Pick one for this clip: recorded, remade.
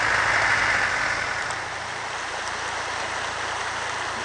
recorded